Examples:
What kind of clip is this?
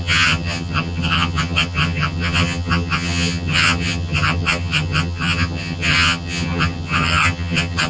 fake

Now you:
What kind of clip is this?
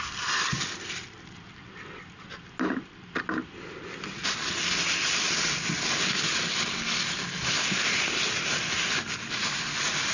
real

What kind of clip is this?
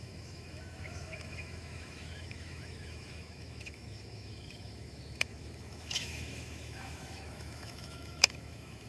fake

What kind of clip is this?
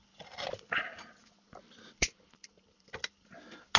real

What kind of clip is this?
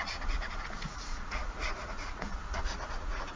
fake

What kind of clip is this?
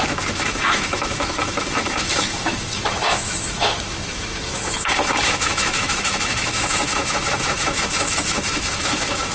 fake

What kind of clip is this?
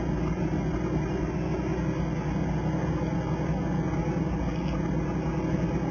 real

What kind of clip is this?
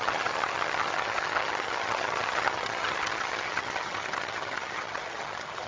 fake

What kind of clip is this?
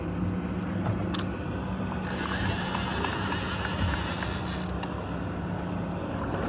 real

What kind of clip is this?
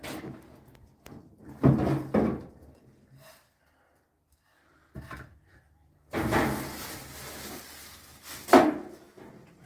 real